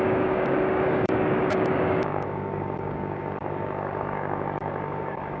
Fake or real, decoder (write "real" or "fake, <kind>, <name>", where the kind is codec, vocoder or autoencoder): fake, codec, DAC